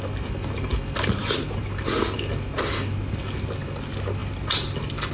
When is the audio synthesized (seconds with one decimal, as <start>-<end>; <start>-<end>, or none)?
none